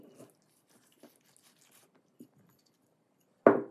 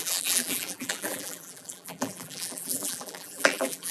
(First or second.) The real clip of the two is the first